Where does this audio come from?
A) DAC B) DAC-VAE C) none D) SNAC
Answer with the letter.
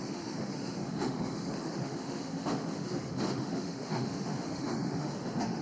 B